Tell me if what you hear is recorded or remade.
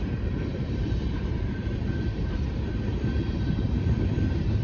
remade